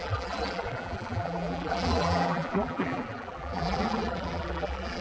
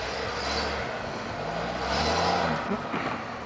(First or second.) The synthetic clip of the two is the first